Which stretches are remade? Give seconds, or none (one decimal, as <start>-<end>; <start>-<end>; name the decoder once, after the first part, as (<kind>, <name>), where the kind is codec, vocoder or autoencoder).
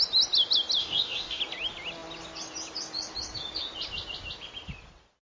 0.8-1.4 (codec, DAC)